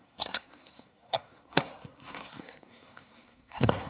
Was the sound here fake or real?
fake